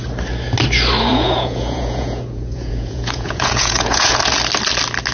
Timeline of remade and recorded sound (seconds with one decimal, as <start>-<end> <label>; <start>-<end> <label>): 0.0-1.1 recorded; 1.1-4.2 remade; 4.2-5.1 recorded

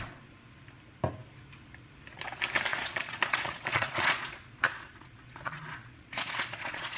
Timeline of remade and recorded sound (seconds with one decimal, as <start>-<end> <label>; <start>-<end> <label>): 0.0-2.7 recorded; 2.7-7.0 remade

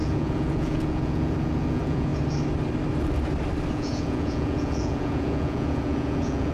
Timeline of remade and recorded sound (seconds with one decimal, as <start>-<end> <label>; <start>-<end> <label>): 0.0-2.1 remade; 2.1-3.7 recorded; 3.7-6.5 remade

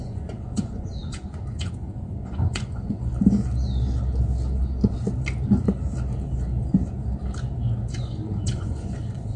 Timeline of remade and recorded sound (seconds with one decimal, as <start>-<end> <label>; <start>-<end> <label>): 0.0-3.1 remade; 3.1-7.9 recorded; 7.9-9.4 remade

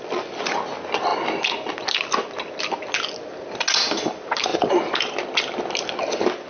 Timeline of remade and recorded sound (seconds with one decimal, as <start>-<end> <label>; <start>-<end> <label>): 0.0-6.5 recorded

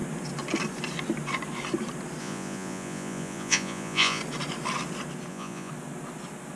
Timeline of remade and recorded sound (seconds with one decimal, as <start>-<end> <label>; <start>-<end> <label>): 0.0-2.2 recorded; 2.2-4.2 remade; 4.2-5.3 recorded; 5.3-5.7 remade; 5.7-6.6 recorded